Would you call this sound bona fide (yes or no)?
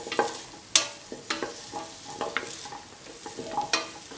yes